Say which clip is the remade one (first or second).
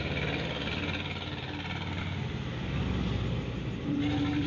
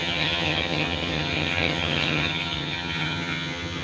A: second